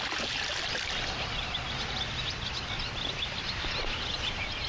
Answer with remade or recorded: recorded